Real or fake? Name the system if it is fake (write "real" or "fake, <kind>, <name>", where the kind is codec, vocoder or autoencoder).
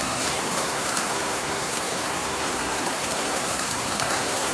fake, codec, SNAC